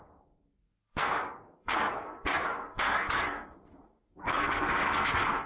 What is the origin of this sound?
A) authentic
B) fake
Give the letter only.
B